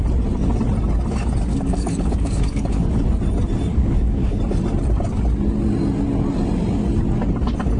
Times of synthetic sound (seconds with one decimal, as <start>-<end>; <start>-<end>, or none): 1.5-3.0; 3.7-4.4